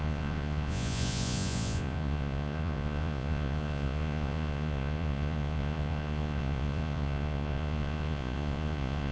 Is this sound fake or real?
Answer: fake